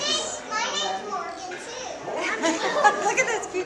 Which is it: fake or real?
real